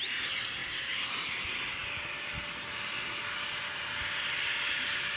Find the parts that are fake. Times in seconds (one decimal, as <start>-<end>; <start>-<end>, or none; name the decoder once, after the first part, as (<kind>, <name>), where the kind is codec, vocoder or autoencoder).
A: 0.0-5.2 (vocoder, BigVGAN v2)